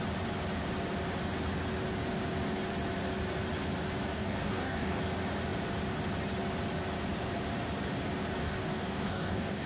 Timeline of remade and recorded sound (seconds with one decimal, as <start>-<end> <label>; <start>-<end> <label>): 0.0-4.1 recorded; 4.1-5.0 remade; 5.0-8.4 recorded; 8.4-9.7 remade